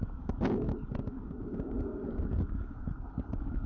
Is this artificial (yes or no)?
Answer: yes